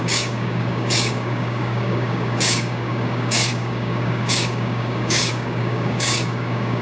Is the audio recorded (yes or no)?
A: no